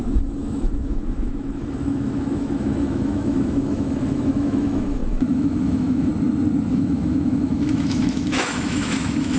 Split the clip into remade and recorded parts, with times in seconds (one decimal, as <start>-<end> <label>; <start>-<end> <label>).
0.0-6.1 remade; 6.1-6.7 recorded; 6.7-9.4 remade